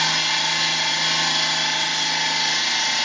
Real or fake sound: real